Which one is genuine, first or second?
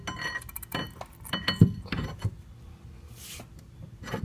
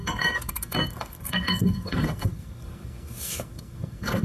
first